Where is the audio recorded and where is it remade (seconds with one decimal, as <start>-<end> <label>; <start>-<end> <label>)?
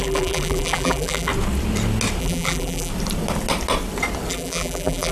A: 0.0-1.3 remade; 1.3-2.2 recorded; 2.2-2.9 remade; 2.9-4.3 recorded; 4.3-5.1 remade